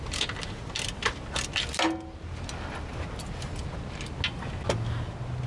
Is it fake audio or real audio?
real